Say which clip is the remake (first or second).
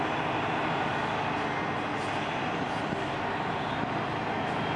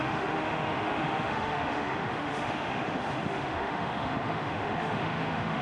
second